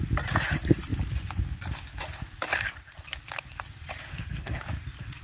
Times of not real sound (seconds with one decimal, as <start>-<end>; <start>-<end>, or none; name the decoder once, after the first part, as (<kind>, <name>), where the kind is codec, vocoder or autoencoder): 4.1-4.6 (codec, SNAC)